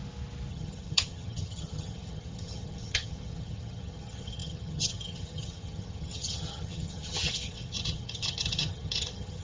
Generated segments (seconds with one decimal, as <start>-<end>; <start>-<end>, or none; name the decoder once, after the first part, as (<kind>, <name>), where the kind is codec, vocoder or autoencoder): 0.5-9.4 (vocoder, HiFi-GAN)